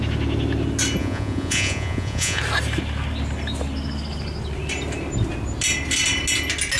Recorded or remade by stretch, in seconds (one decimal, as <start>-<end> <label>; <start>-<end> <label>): 0.0-1.0 recorded; 1.0-2.4 remade; 2.4-6.8 recorded